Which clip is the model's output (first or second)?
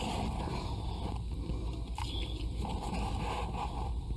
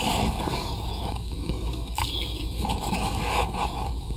second